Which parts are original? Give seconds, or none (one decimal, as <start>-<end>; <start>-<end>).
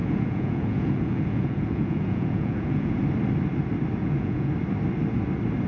3.0-4.0; 4.5-5.7